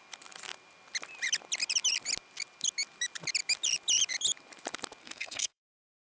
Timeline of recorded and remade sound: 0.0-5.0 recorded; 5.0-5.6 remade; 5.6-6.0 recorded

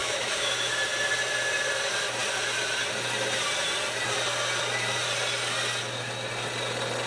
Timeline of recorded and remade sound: 0.0-0.7 remade; 0.7-7.1 recorded

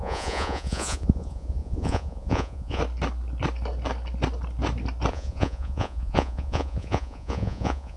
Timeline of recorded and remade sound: 0.0-2.8 remade; 2.8-5.1 recorded; 5.1-8.0 remade

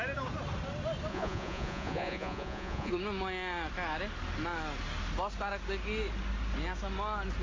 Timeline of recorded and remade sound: 0.0-1.1 recorded; 1.1-2.9 remade; 2.9-7.4 recorded

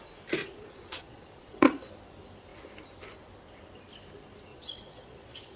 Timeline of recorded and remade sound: 0.0-0.4 recorded; 0.4-1.9 remade; 1.9-4.5 recorded; 4.5-5.6 remade

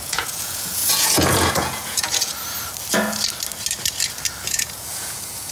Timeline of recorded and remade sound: 0.0-2.3 remade; 2.3-4.5 recorded; 4.5-5.5 remade

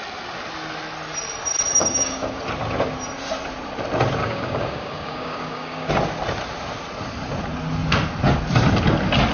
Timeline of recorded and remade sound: 0.0-1.7 recorded; 1.7-2.4 remade; 2.4-4.2 recorded; 4.2-5.9 remade; 5.9-9.3 recorded

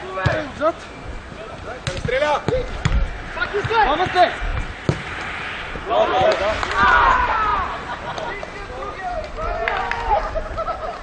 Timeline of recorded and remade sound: 0.0-11.0 recorded